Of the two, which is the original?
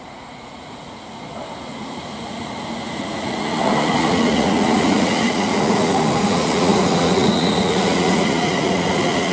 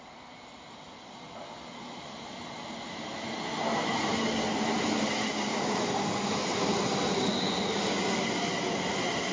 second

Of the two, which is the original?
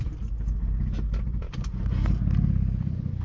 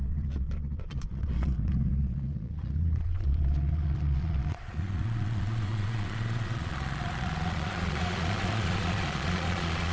first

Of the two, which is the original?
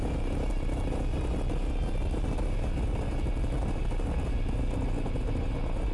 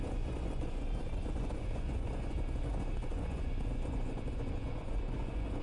first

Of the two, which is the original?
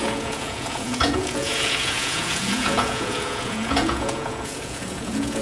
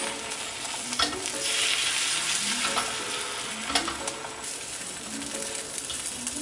second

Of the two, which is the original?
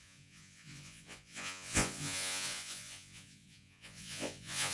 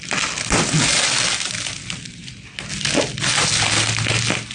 second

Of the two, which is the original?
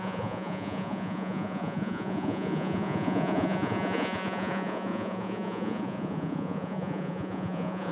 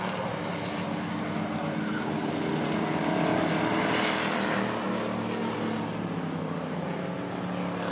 second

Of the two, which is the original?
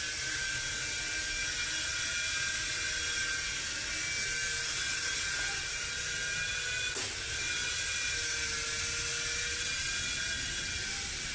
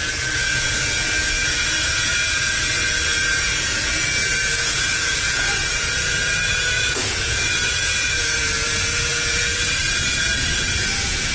first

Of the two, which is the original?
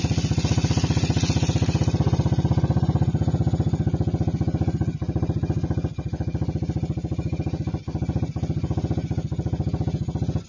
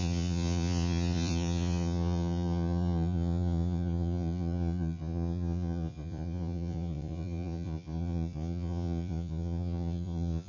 first